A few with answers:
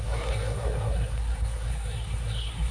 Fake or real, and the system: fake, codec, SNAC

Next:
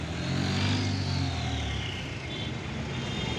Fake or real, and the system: real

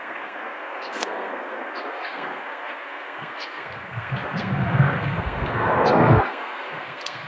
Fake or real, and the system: fake, codec, SNAC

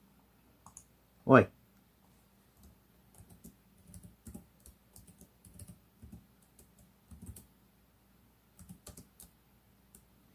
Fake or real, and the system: real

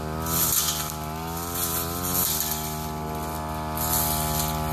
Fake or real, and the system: real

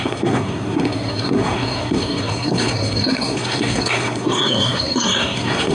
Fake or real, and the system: fake, codec, SNAC